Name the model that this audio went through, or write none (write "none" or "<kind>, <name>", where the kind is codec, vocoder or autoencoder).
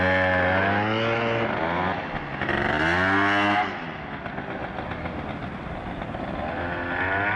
none